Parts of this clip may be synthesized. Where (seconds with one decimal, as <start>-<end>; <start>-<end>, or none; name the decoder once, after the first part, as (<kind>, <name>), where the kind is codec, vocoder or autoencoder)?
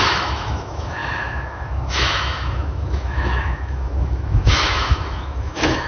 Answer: 0.0-5.9 (autoencoder, DAC-VAE)